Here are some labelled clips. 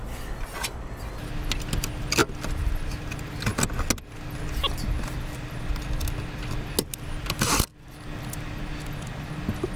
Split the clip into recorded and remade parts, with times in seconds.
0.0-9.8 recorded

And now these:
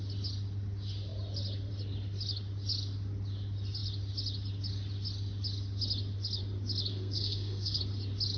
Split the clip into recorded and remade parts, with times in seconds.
0.0-6.9 recorded; 6.9-7.8 remade; 7.8-8.4 recorded

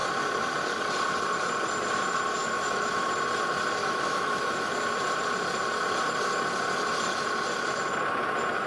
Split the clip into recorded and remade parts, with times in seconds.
0.0-2.4 recorded; 2.4-3.1 remade; 3.1-3.8 recorded; 3.8-4.7 remade; 4.7-8.7 recorded

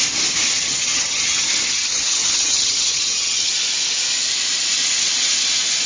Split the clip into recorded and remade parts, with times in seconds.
0.0-0.6 recorded; 0.6-3.5 remade; 3.5-5.9 recorded

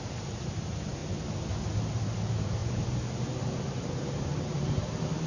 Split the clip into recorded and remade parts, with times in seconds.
0.0-1.0 remade; 1.0-1.8 recorded; 1.8-5.3 remade

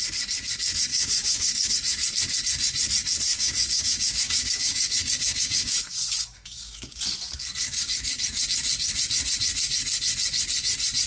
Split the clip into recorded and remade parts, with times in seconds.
0.0-0.9 recorded; 0.9-1.7 remade; 1.7-3.3 recorded; 3.3-7.0 remade; 7.0-7.6 recorded; 7.6-8.2 remade; 8.2-11.1 recorded